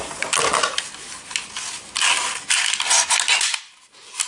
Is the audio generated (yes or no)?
no